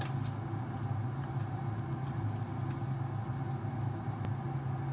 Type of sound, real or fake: real